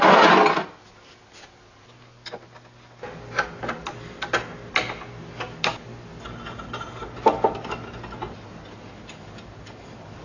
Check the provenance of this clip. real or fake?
real